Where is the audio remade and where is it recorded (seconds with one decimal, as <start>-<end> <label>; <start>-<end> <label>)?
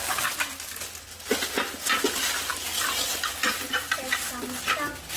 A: 0.0-5.2 recorded